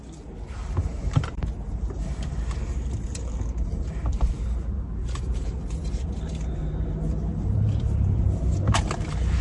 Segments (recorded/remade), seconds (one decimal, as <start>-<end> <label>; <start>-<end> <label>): 0.0-0.8 recorded; 0.8-5.5 remade; 5.5-7.3 recorded; 7.3-8.2 remade; 8.2-9.4 recorded